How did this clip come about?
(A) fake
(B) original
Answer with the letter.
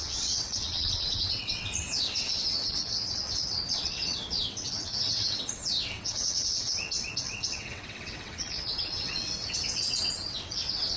A